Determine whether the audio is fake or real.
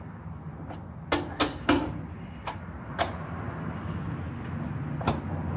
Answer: real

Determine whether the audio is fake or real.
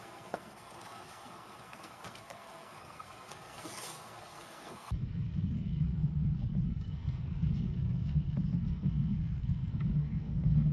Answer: fake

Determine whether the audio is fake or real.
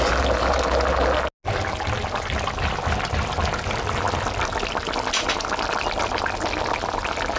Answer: real